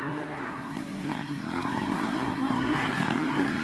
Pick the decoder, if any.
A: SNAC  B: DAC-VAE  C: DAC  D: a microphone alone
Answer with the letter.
A